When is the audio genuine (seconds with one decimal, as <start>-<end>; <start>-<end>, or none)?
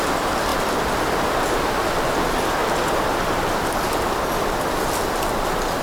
0.0-5.8